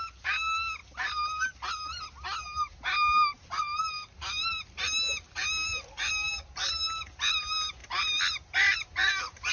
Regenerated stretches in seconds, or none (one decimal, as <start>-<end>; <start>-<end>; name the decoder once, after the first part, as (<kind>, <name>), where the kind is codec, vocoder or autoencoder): none